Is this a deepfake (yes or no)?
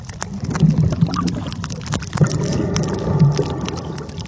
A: no